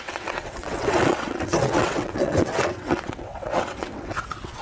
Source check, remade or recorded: remade